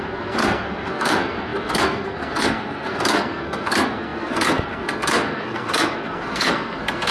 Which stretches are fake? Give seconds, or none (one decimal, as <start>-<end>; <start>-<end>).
0.0-7.1